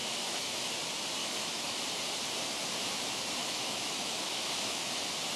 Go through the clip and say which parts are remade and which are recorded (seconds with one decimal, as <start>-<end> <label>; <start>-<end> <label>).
0.0-0.7 remade; 0.7-1.2 recorded; 1.2-1.8 remade; 1.8-3.4 recorded; 3.4-4.9 remade; 4.9-5.4 recorded